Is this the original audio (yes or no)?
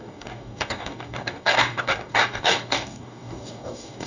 no